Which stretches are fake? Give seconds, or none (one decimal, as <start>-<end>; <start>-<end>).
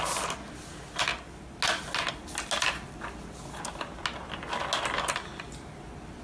none